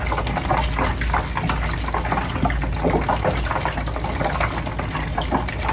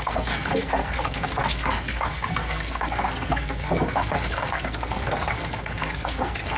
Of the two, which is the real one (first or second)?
first